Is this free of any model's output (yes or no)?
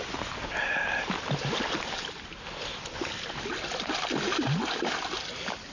yes